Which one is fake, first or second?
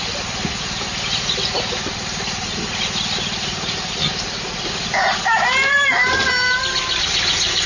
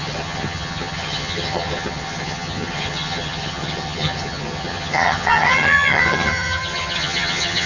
second